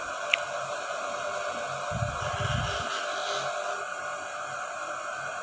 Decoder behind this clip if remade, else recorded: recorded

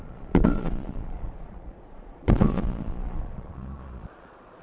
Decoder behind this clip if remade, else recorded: remade, vocoder, Vocos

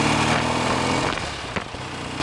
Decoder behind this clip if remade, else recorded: recorded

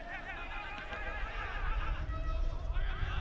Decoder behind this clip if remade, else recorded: recorded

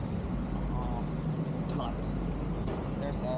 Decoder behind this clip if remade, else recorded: recorded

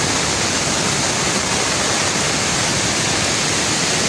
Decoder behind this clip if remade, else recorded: recorded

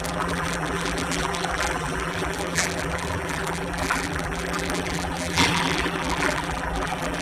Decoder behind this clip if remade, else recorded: remade, vocoder, BigVGAN v2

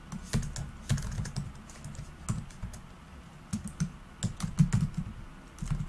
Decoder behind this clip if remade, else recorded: recorded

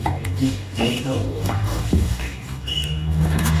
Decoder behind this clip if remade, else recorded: remade, codec, DAC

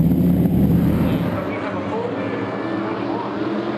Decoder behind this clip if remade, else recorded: recorded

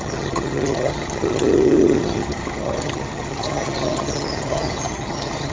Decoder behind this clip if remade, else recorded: remade, vocoder, HiFi-GAN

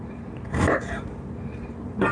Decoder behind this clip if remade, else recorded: remade, vocoder, BigVGAN v2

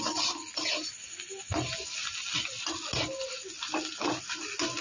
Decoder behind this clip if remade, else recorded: recorded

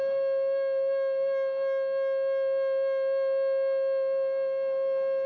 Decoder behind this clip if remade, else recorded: recorded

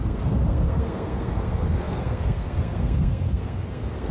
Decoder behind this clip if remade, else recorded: remade, codec, SNAC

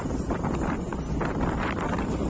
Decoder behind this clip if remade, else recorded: recorded